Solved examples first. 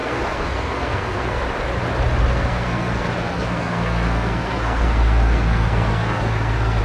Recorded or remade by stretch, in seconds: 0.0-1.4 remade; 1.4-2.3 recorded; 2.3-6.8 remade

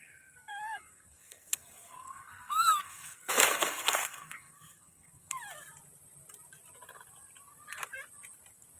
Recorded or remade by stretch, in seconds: 0.0-5.4 remade; 5.4-8.8 recorded

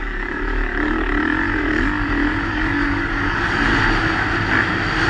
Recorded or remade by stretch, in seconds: 0.0-1.1 remade; 1.1-2.5 recorded; 2.5-3.7 remade; 3.7-5.1 recorded

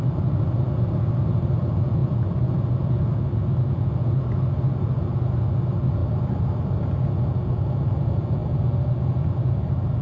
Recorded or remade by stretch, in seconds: 0.0-10.0 recorded

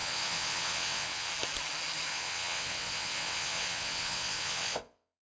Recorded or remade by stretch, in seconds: 0.0-1.3 remade; 1.3-2.1 recorded; 2.1-5.2 remade

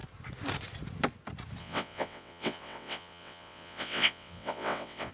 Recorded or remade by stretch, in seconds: 0.0-1.6 recorded; 1.6-5.1 remade